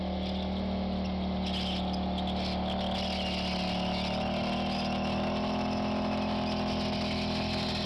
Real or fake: real